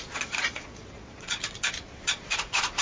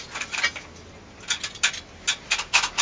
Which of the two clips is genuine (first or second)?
second